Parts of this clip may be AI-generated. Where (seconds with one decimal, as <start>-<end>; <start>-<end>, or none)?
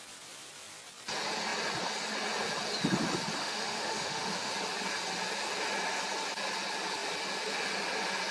3.4-4.5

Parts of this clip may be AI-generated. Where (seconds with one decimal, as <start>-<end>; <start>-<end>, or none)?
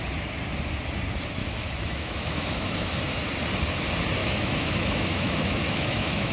1.4-3.0; 4.2-6.3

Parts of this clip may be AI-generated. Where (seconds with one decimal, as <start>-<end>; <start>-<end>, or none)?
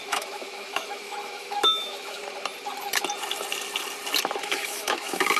0.0-2.2; 4.4-5.4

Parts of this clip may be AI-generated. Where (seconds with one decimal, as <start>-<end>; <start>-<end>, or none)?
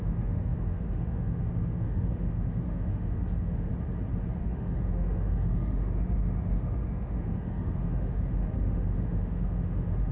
0.0-3.7; 4.4-10.1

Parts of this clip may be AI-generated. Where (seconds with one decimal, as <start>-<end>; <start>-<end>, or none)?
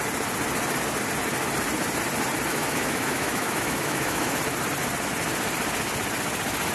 2.5-4.4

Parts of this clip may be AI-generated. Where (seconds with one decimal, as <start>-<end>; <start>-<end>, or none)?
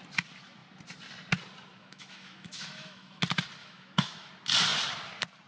1.8-3.2; 3.6-4.3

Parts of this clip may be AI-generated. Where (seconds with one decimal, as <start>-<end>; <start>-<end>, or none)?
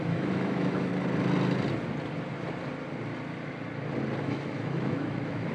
0.0-0.9; 4.2-5.5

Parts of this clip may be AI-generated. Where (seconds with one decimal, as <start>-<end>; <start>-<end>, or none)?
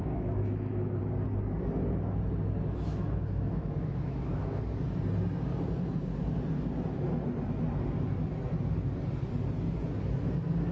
0.0-1.0; 2.9-4.6